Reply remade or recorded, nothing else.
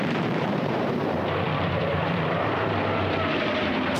remade